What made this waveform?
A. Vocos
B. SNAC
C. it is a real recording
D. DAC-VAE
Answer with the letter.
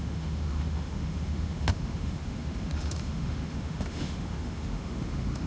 D